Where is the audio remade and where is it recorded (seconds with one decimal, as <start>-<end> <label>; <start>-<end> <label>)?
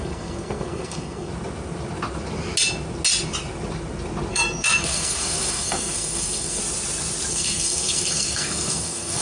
0.0-1.3 remade; 1.3-4.3 recorded; 4.3-6.6 remade; 6.6-7.3 recorded; 7.3-9.2 remade